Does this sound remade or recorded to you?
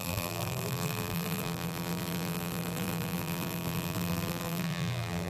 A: remade